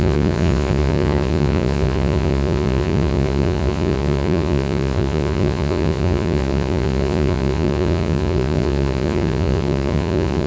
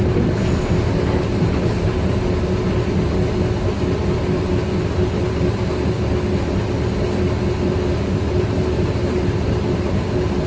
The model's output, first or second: first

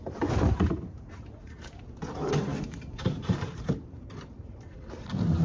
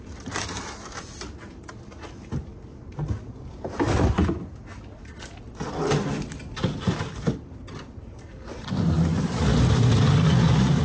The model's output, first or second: first